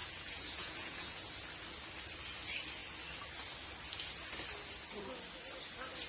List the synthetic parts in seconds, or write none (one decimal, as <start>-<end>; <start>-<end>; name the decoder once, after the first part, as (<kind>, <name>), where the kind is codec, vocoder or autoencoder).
0.0-1.3 (vocoder, Vocos)